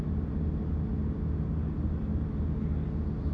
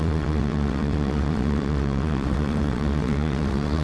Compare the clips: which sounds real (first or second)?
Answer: first